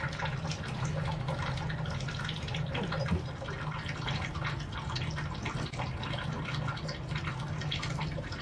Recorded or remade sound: recorded